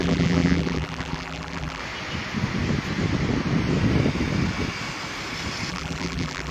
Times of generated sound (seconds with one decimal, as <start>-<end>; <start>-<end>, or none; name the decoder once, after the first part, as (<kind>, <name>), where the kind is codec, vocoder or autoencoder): 0.0-1.8 (vocoder, BigVGAN v2); 5.7-6.5